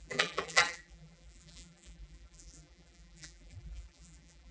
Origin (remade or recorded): remade